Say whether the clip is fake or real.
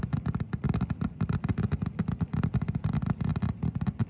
real